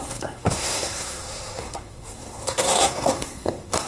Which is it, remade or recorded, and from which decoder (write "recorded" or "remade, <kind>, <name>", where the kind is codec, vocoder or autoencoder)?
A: remade, codec, SNAC